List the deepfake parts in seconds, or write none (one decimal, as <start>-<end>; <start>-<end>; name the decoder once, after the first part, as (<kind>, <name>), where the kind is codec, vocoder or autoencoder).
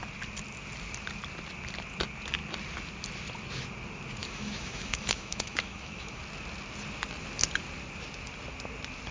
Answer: 4.2-6.2 (autoencoder, DAC-VAE)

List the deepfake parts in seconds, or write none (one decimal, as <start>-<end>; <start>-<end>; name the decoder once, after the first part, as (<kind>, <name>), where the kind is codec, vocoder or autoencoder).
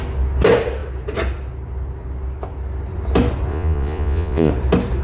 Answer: 3.5-4.5 (vocoder, Vocos)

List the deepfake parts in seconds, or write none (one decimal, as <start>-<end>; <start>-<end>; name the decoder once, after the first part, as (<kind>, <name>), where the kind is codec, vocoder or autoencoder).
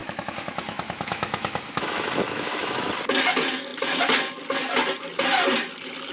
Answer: 0.0-2.9 (autoencoder, DAC-VAE)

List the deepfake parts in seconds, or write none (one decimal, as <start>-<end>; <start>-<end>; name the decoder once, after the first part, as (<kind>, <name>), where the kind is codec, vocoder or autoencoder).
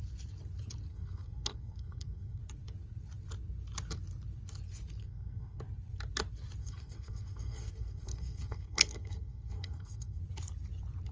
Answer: 0.9-2.4 (codec, SNAC); 5.0-5.6; 6.6-10.2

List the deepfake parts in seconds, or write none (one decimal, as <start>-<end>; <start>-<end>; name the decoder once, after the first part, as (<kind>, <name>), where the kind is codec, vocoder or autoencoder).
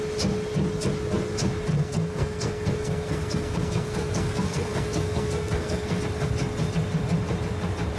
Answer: 1.7-6.0 (codec, SNAC)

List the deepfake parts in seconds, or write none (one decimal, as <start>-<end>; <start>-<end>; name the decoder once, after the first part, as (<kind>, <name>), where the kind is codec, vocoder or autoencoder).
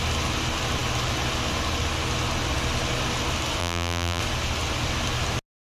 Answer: 3.6-4.2 (vocoder, BigVGAN v2)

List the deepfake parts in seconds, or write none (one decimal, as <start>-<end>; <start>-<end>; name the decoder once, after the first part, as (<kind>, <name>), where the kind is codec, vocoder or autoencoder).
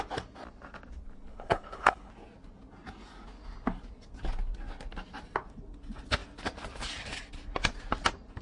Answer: 1.3-2.1 (codec, HILCodec)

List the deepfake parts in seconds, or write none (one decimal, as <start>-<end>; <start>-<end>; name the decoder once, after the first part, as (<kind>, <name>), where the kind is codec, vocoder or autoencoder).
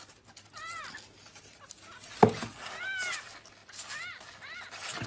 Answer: none